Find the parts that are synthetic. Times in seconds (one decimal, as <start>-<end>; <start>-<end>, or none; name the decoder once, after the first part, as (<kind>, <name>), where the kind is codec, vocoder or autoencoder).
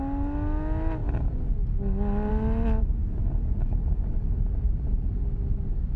none